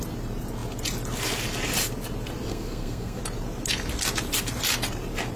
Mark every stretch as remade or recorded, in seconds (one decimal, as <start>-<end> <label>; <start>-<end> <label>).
0.0-2.5 recorded; 2.5-3.2 remade; 3.2-5.4 recorded

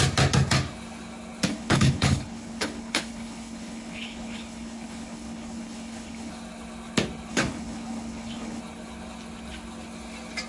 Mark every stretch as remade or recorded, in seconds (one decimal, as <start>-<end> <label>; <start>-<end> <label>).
0.0-1.5 recorded; 1.5-6.3 remade; 6.3-7.3 recorded; 7.3-8.6 remade; 8.6-10.5 recorded

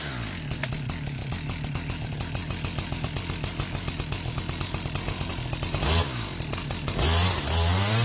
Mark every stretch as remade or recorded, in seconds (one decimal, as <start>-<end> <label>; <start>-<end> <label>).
0.0-8.0 recorded

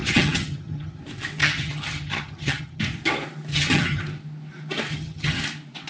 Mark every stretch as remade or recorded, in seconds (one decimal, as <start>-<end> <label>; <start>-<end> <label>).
0.0-1.0 remade; 1.0-1.4 recorded; 1.4-2.8 remade; 2.8-3.5 recorded; 3.5-4.0 remade; 4.0-4.9 recorded; 4.9-5.4 remade; 5.4-5.9 recorded

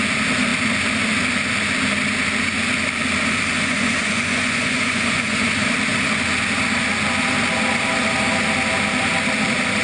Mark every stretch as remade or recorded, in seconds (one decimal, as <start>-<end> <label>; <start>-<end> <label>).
0.0-3.5 recorded; 3.5-5.5 remade; 5.5-9.8 recorded

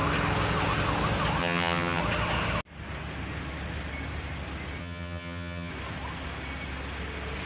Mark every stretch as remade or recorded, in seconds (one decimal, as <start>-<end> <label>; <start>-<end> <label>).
0.0-1.4 recorded; 1.4-2.0 remade; 2.0-4.8 recorded; 4.8-5.7 remade; 5.7-7.5 recorded

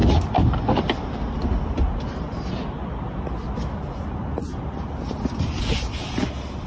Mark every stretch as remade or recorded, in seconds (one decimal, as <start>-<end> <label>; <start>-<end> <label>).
0.0-6.7 recorded

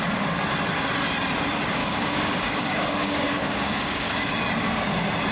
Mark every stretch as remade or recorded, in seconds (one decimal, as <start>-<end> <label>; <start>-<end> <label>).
0.0-1.8 recorded; 1.8-4.4 remade; 4.4-5.3 recorded